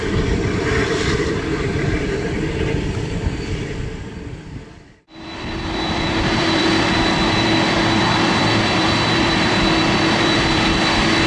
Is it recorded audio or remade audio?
remade